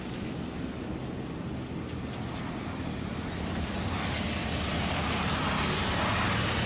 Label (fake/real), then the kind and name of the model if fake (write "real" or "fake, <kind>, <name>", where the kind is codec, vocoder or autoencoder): real